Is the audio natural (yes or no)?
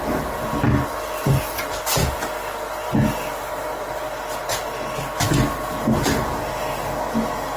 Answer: yes